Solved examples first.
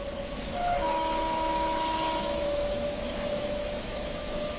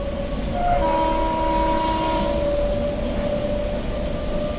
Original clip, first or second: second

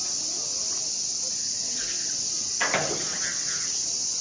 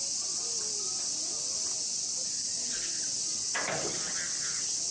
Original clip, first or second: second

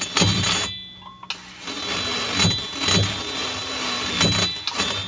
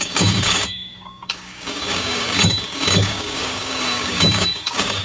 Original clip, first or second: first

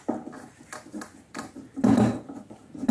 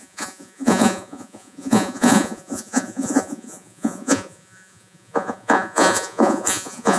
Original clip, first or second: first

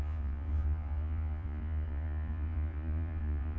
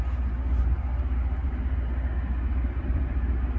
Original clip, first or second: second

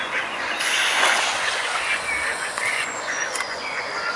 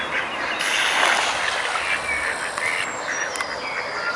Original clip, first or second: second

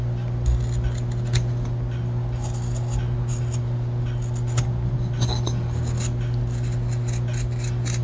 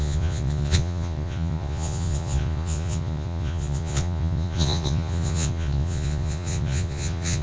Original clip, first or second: first